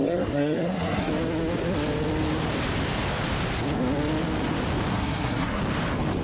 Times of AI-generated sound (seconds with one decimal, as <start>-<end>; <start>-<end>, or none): 0.0-1.1; 4.9-5.6